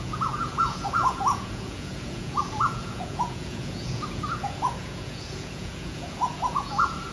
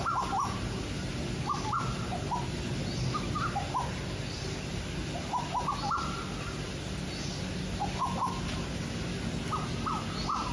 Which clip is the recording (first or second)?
second